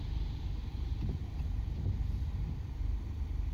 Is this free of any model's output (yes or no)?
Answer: no